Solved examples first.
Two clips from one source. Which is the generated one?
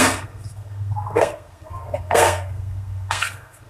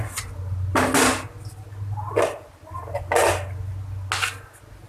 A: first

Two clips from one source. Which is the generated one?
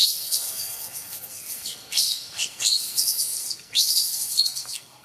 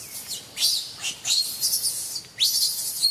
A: first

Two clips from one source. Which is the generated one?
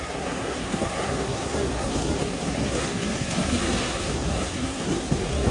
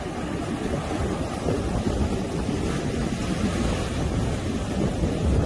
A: first